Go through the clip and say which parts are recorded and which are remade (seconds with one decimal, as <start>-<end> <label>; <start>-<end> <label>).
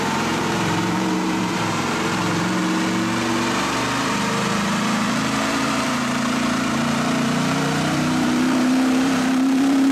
0.0-2.6 remade; 2.6-4.0 recorded; 4.0-9.9 remade